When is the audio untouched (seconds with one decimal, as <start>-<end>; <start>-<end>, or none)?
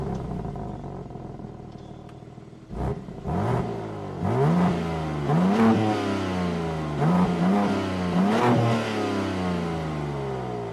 0.0-10.7